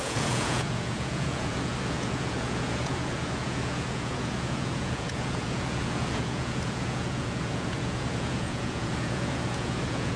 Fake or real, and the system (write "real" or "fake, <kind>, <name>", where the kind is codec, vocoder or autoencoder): fake, vocoder, Vocos